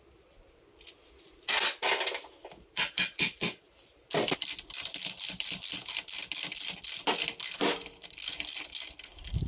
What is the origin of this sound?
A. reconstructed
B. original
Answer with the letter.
B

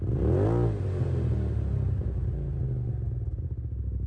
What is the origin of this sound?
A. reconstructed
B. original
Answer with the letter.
B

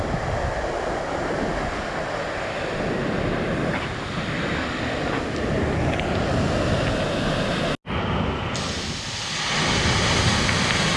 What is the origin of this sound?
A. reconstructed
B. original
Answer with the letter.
B